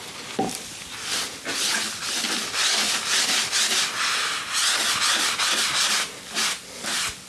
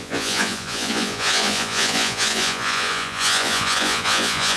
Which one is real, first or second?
first